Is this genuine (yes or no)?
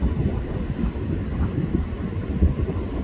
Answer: yes